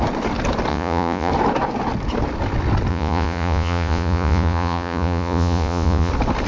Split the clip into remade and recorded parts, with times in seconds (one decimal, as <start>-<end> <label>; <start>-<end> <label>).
0.0-0.7 recorded; 0.7-1.3 remade; 1.3-2.9 recorded; 2.9-6.1 remade; 6.1-6.5 recorded